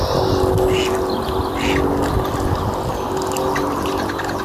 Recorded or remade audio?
recorded